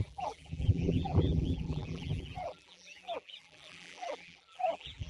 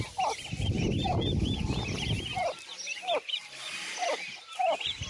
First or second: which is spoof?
first